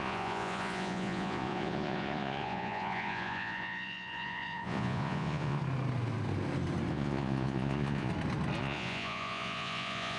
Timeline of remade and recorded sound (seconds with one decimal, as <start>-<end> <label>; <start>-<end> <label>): 0.0-5.6 remade; 5.6-6.9 recorded; 6.9-8.1 remade; 8.1-8.6 recorded; 8.6-10.2 remade